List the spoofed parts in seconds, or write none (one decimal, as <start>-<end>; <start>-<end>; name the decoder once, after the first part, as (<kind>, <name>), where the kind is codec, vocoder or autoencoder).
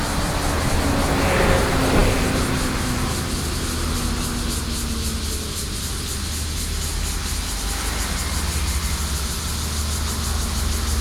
none